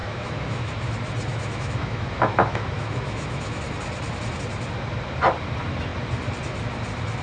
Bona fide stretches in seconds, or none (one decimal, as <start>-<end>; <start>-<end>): 0.9-1.3; 3.6-7.2

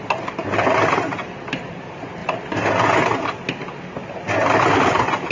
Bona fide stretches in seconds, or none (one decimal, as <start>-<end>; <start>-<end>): 0.0-1.1; 1.8-2.2; 2.7-5.3

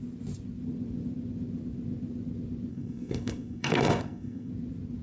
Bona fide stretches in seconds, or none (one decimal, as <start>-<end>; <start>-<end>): 0.0-2.7; 4.5-5.0

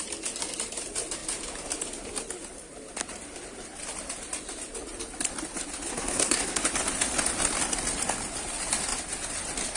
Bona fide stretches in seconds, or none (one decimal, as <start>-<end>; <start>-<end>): 0.0-5.9; 6.6-9.8

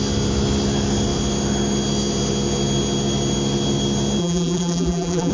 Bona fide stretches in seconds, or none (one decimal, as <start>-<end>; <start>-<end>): 0.0-4.2

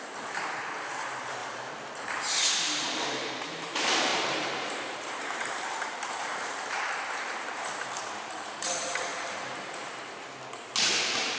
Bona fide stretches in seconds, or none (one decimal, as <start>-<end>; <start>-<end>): 9.1-11.0

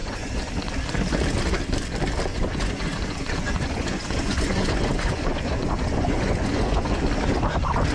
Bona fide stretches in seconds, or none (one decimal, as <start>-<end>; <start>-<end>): 0.5-2.3; 7.0-7.9